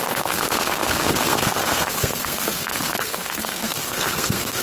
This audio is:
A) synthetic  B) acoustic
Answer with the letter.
A